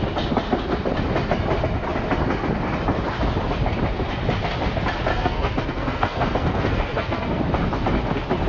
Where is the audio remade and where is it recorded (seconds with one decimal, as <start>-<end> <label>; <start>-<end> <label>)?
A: 0.0-5.1 recorded; 5.1-7.4 remade; 7.4-8.5 recorded